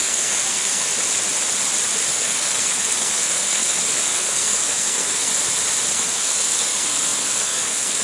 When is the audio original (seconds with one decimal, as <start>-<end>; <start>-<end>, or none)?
0.9-2.1; 5.3-5.9